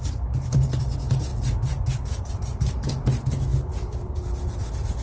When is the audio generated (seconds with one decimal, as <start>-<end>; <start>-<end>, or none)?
none

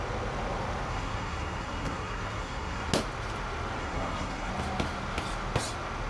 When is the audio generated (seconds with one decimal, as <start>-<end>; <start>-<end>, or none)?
0.9-2.9; 3.8-4.5

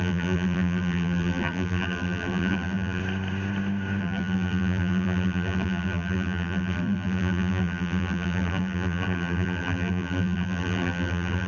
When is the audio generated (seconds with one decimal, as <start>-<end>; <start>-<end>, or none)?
0.0-3.0; 4.0-11.5

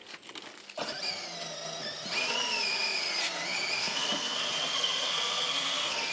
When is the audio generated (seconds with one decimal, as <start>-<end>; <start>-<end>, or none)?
3.8-6.1

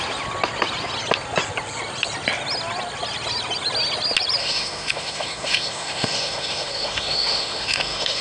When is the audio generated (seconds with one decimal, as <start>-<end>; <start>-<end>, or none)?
4.4-8.2

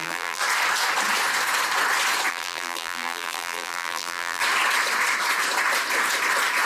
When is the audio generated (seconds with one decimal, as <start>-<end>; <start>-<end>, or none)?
0.0-0.4; 2.3-4.4

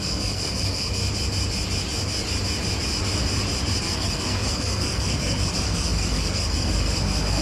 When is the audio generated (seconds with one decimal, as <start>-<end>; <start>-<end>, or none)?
0.0-1.0; 3.8-7.4

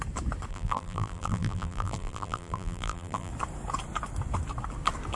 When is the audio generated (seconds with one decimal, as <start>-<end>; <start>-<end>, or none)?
0.5-3.3